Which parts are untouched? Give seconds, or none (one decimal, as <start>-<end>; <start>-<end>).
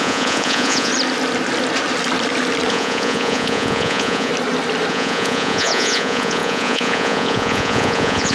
0.9-2.7; 4.3-4.9